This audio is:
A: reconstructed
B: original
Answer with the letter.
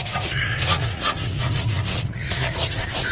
A